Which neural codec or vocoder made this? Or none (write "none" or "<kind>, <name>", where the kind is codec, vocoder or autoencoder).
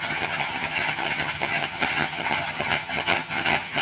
vocoder, HiFi-GAN